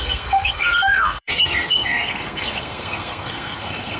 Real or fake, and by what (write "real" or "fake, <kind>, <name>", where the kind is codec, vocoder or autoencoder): fake, codec, SNAC